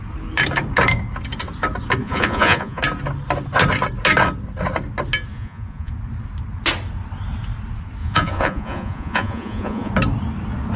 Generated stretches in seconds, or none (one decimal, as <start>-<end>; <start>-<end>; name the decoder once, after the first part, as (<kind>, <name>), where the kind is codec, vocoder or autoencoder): 2.0-2.8 (vocoder, Vocos); 5.3-5.9; 8.0-9.9